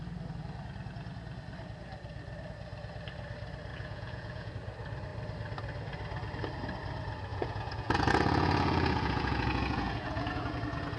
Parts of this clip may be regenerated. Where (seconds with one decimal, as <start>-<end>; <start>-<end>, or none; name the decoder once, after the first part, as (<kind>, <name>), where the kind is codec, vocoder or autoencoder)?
3.7-4.5 (vocoder, Vocos); 7.3-10.5